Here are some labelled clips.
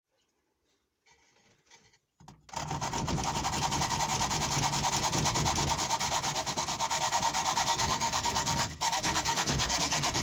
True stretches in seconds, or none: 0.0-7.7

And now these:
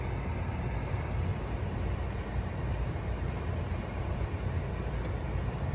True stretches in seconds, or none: 0.0-1.3; 4.7-5.7